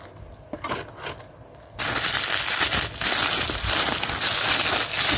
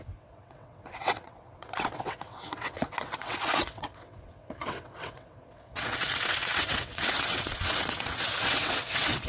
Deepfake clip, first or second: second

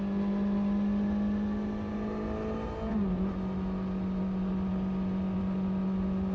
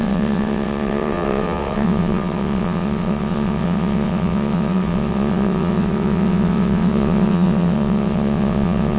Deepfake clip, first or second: second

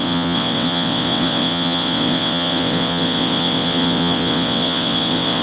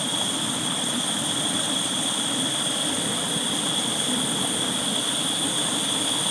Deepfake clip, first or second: first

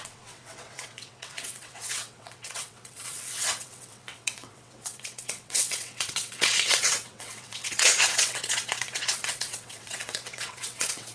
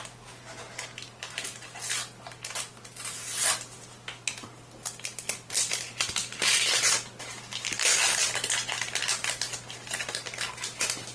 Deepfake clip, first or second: first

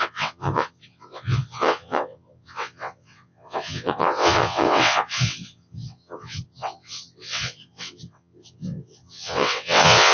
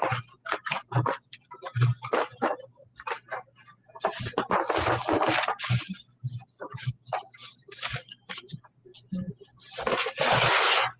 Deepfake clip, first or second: first